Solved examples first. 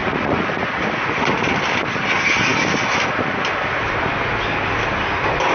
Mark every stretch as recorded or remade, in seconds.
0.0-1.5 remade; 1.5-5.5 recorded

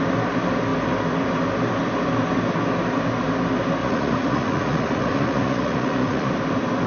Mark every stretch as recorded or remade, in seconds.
0.0-3.8 recorded; 3.8-6.3 remade; 6.3-6.9 recorded

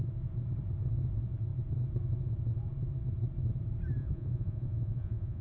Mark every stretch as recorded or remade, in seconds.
0.0-4.0 recorded; 4.0-5.4 remade

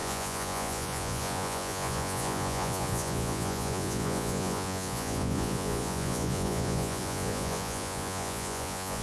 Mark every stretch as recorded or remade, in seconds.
0.0-9.0 remade

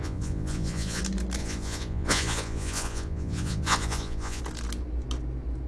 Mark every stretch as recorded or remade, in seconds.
0.0-1.0 remade; 1.0-1.4 recorded; 1.4-4.4 remade; 4.4-5.7 recorded